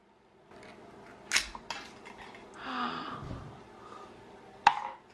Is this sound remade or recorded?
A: recorded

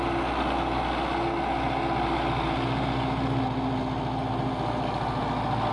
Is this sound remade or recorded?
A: recorded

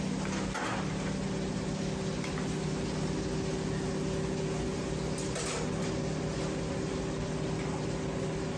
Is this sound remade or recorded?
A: recorded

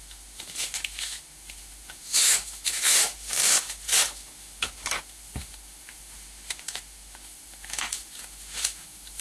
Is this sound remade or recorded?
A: remade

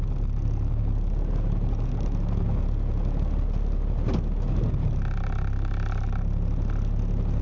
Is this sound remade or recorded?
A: recorded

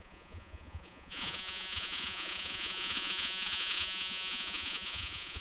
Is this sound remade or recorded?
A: remade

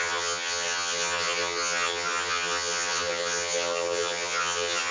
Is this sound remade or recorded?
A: remade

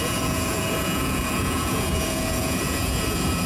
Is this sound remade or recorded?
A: remade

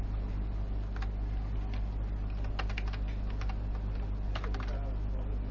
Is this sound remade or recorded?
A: recorded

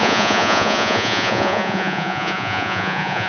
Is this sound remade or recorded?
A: remade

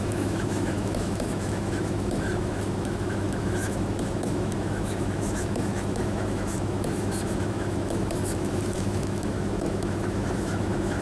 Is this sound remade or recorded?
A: remade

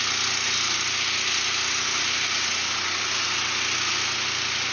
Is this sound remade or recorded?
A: recorded